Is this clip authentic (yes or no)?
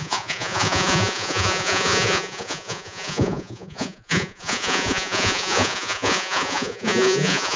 no